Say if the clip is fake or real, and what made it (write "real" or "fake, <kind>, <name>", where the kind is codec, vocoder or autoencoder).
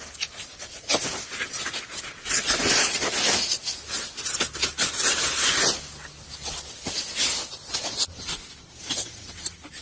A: real